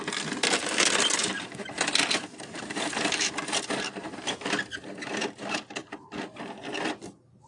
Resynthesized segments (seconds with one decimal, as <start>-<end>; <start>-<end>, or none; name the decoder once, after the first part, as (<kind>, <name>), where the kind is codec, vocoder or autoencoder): 1.2-4.6 (vocoder, BigVGAN v2)